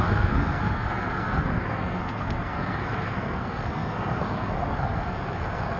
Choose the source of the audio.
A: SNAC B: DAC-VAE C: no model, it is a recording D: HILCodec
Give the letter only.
A